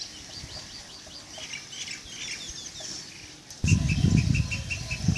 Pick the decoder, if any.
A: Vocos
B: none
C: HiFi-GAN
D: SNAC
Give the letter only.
B